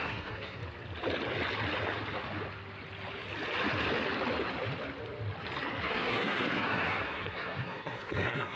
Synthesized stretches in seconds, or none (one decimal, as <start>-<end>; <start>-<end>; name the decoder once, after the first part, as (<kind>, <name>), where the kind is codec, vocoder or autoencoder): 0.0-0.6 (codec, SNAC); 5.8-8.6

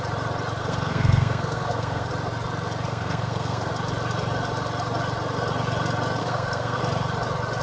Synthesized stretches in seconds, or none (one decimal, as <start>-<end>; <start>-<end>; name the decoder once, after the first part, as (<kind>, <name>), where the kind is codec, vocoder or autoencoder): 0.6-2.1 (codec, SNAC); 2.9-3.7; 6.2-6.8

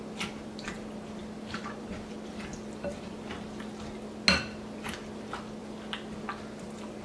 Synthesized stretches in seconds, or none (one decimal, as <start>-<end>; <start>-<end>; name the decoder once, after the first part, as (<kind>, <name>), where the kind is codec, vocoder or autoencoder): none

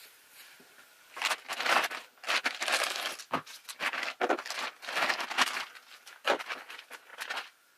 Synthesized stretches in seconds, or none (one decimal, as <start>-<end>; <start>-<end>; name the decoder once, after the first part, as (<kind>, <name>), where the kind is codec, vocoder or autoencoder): none